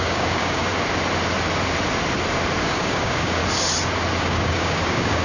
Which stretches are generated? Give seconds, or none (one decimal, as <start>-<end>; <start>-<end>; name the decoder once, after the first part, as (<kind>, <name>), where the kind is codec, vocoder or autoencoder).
0.0-0.7 (codec, DAC); 2.6-3.4; 4.2-5.2